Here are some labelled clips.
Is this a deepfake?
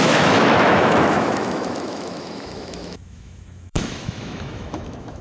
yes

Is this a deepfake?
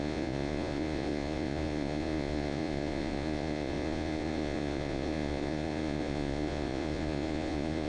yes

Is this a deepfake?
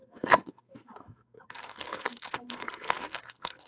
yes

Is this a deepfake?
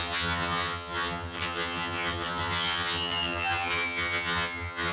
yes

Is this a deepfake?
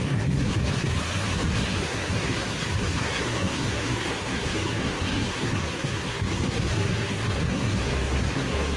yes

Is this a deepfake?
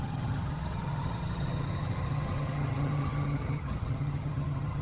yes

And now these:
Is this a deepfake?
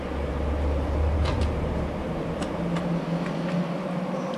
no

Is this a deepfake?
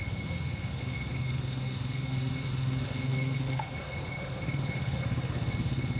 yes